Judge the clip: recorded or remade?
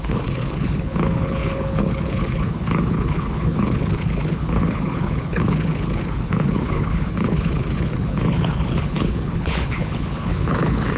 remade